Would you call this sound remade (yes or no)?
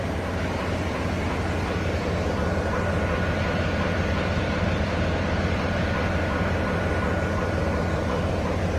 no